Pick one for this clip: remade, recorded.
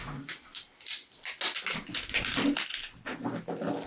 recorded